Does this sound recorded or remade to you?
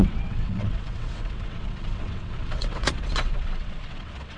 remade